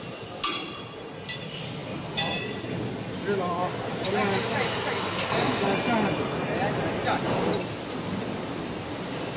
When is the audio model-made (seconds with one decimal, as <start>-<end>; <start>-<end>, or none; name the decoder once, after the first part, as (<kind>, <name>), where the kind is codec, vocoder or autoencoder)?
none